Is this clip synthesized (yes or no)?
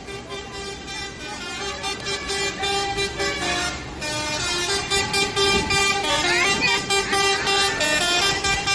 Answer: no